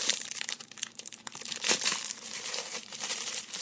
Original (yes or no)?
no